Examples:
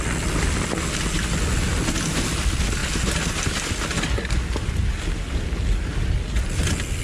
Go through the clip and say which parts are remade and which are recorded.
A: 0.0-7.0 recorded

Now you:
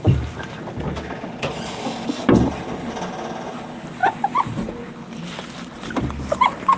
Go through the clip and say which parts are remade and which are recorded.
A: 0.0-6.8 recorded

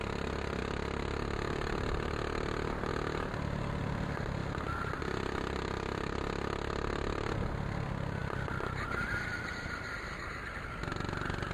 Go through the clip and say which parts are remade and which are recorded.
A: 0.0-11.5 recorded